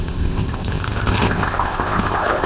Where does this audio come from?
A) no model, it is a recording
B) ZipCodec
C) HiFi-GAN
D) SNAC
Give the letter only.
B